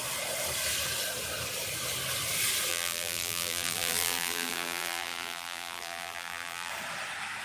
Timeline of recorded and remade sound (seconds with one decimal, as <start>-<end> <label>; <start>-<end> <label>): 0.0-2.7 recorded; 2.7-6.7 remade; 6.7-7.4 recorded